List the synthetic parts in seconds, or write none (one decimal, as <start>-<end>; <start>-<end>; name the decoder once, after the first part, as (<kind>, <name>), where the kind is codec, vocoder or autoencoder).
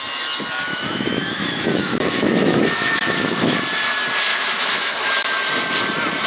0.7-3.6 (autoencoder, DAC-VAE); 4.3-5.4